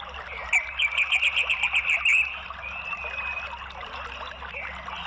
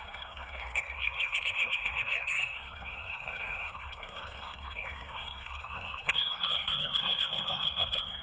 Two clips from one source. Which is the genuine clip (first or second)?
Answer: first